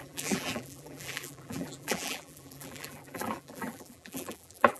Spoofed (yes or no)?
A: yes